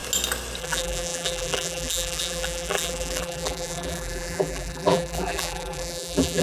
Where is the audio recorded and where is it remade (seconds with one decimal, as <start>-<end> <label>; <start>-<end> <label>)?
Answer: 0.0-0.6 recorded; 0.6-6.4 remade